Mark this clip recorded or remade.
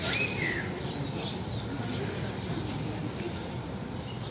recorded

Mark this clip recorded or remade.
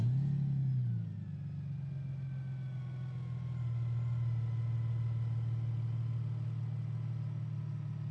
recorded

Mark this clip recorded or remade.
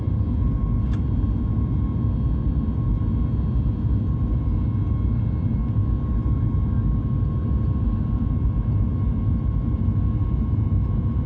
recorded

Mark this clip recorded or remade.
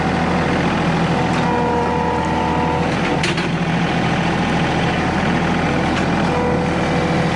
recorded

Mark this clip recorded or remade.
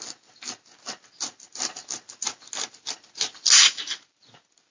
recorded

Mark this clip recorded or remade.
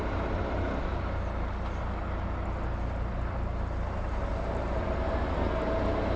recorded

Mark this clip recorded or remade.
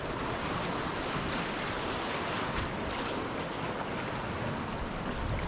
recorded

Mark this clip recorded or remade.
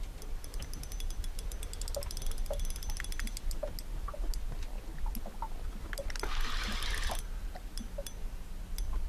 recorded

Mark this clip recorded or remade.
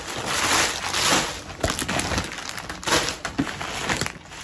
recorded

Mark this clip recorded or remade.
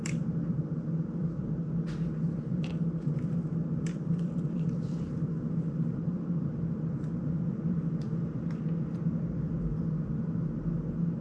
remade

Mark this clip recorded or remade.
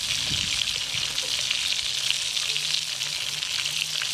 recorded